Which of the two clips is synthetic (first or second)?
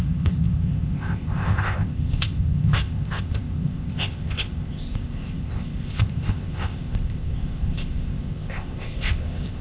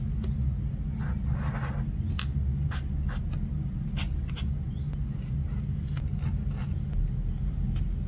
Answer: first